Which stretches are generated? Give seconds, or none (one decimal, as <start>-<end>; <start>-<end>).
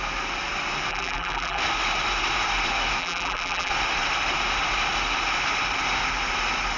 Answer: 0.9-1.6; 3.0-3.7